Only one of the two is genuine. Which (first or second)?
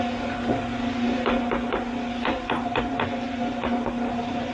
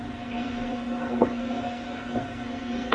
first